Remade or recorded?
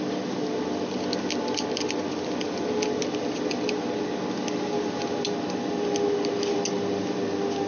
recorded